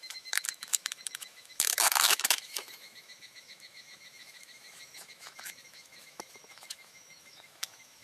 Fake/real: fake